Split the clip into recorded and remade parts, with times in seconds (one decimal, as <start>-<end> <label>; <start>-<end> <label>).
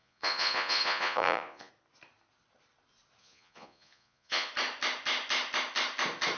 0.0-1.7 remade; 1.7-3.2 recorded; 3.2-4.5 remade; 4.5-6.4 recorded